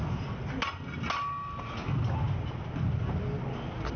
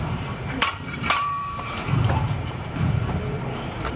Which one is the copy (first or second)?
second